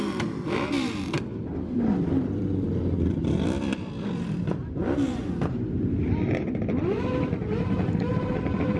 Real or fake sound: fake